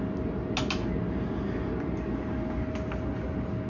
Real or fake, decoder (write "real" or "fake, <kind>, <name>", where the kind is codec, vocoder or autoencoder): real